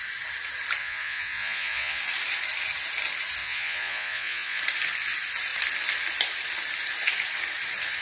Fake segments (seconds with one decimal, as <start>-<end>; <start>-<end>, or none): 0.8-2.0; 3.4-4.6